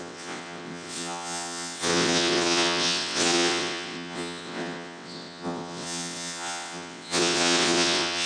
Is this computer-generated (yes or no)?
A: yes